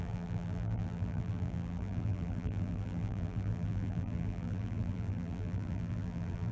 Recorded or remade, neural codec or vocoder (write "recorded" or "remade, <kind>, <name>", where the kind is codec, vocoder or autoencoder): remade, vocoder, BigVGAN v2